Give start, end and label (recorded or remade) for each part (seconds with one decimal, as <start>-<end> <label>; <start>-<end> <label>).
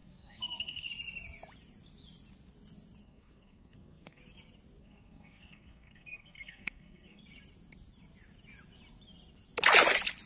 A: 0.0-0.9 remade; 0.9-3.0 recorded; 3.0-4.2 remade; 4.2-4.8 recorded; 4.8-7.2 remade; 7.2-10.3 recorded